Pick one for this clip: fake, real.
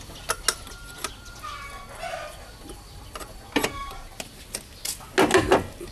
real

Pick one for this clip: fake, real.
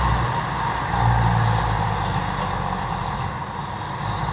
real